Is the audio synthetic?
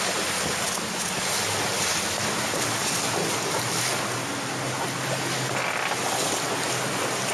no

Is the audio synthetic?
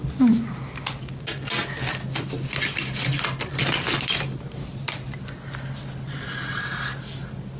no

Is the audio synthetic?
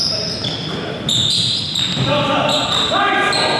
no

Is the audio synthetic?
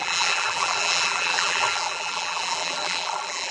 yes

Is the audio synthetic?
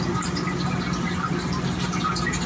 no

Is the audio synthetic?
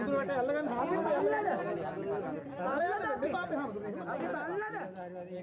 no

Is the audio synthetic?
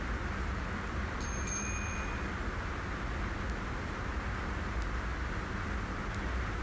no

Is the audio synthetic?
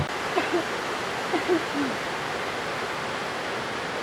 no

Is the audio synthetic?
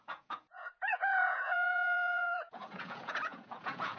yes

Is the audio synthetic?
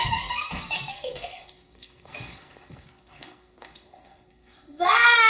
yes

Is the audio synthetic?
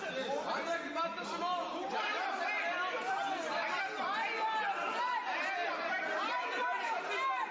no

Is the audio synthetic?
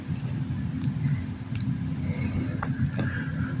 no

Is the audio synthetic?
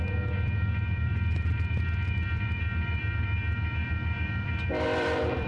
yes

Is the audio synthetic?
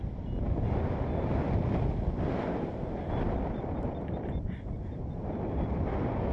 no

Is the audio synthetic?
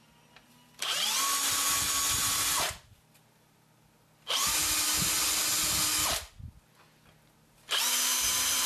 no